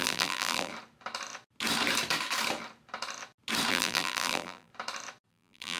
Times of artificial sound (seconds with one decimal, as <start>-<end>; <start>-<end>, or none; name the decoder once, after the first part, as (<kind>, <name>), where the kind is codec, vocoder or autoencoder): 0.0-0.7 (vocoder, BigVGAN v2); 3.7-4.7; 5.3-5.8